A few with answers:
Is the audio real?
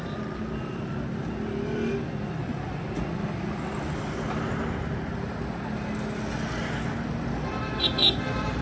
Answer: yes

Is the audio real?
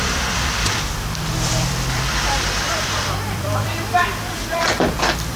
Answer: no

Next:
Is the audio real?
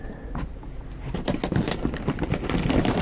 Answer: yes